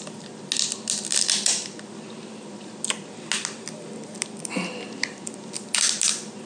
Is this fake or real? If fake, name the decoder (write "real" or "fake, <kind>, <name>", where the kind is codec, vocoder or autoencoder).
real